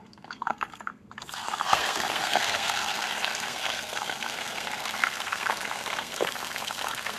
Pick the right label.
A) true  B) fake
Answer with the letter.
B